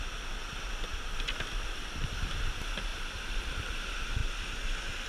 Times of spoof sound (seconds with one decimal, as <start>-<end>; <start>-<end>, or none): 0.9-2.4; 2.9-3.5